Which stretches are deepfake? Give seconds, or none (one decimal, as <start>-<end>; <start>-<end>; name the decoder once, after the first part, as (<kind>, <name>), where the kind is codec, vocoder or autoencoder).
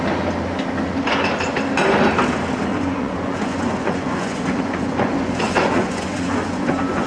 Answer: 2.7-7.1 (vocoder, Vocos)